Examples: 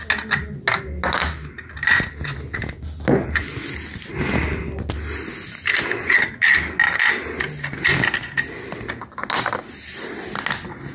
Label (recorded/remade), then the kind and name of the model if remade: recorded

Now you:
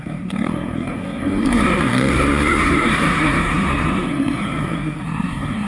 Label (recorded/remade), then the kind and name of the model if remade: remade, codec, SNAC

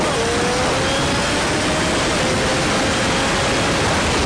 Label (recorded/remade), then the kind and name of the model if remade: recorded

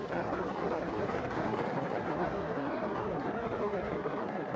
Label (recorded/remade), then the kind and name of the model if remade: remade, codec, SNAC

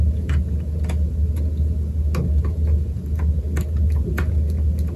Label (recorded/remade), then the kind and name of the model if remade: recorded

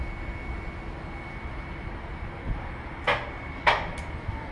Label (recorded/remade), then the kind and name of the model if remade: recorded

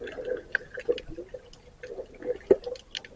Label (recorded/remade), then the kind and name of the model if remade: recorded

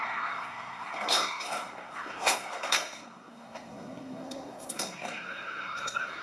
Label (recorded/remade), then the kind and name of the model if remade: remade, codec, SNAC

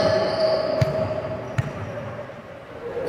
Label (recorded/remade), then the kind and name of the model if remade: recorded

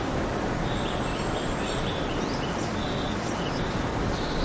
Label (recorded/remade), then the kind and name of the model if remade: recorded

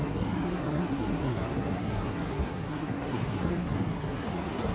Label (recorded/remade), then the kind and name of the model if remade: remade, codec, SNAC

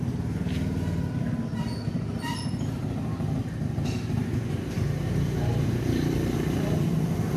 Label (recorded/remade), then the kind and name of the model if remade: recorded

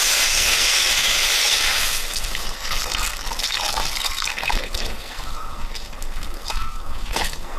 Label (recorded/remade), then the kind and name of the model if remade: remade, codec, SNAC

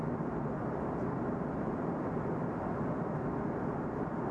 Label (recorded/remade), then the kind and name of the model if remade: recorded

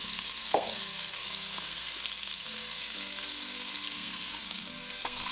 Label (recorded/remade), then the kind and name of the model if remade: remade, codec, SNAC